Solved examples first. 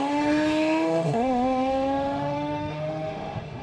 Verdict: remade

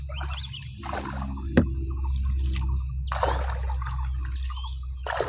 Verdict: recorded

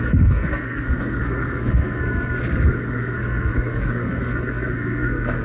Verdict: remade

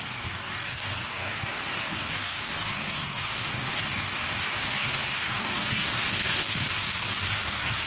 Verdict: remade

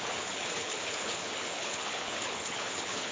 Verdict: remade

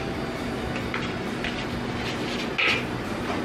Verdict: recorded